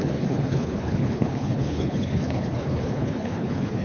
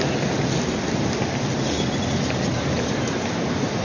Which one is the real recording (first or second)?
second